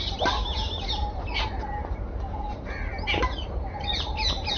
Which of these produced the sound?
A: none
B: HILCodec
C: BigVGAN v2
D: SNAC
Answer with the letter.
A